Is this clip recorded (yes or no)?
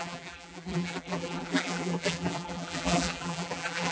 no